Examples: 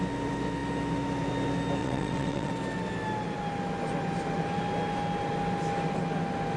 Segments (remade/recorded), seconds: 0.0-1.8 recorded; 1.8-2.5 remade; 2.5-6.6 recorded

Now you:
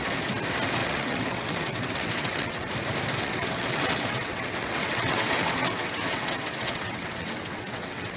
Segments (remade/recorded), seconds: 0.0-0.8 recorded; 0.8-2.7 remade; 2.7-3.2 recorded; 3.2-8.2 remade

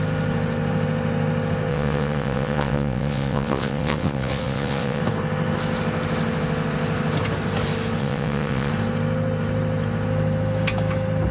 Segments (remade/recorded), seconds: 0.0-1.7 recorded; 1.7-5.0 remade; 5.0-8.0 recorded; 8.0-8.7 remade; 8.7-11.3 recorded

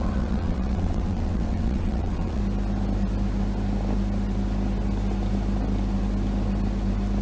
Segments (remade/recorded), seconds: 0.0-2.4 remade; 2.4-7.2 recorded

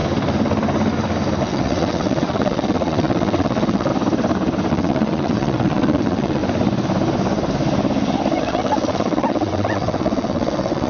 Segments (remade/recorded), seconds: 0.0-1.4 recorded; 1.4-3.9 remade; 3.9-4.7 recorded; 4.7-6.4 remade; 6.4-8.4 recorded; 8.4-10.9 remade

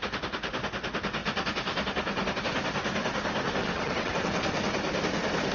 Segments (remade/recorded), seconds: 0.0-3.6 recorded; 3.6-4.1 remade; 4.1-5.5 recorded

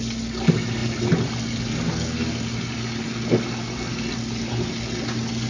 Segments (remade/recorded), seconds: 0.0-5.5 recorded

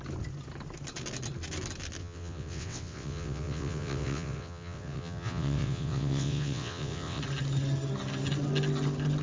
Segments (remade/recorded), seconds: 0.0-2.0 recorded; 2.0-7.2 remade; 7.2-9.2 recorded